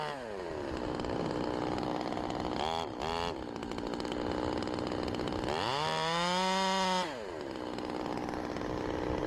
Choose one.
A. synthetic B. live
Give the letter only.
B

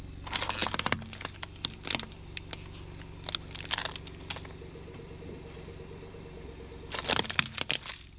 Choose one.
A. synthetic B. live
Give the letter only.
B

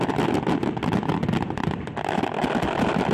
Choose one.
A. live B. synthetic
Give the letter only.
A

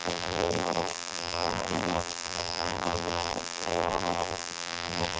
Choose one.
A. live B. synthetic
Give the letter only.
B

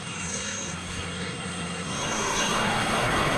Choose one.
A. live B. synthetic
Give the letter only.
B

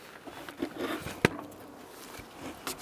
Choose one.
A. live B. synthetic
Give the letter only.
A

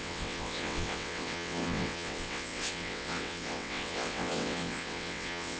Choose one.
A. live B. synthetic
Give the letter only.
B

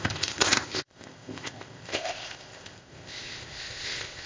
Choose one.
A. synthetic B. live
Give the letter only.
A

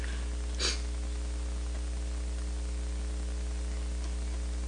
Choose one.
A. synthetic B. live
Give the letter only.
B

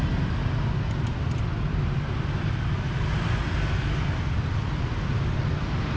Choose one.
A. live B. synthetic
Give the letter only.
A